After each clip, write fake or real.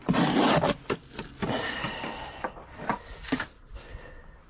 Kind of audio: real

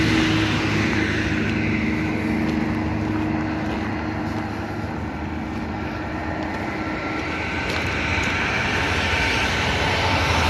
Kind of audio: real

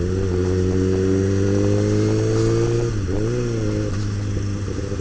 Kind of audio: real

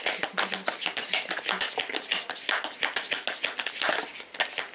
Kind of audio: real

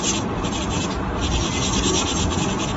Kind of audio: real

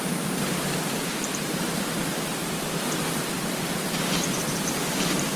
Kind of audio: fake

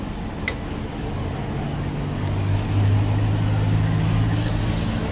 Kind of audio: real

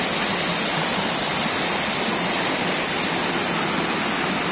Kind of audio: real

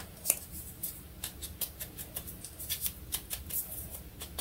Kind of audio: fake